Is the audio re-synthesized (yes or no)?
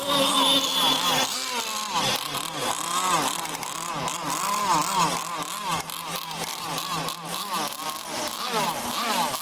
no